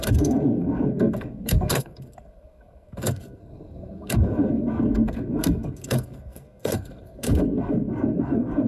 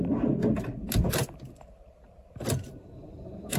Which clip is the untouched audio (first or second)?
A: second